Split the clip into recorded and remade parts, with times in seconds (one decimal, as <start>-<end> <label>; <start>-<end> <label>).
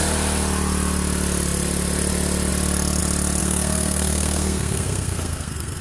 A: 0.0-3.4 recorded; 3.4-5.8 remade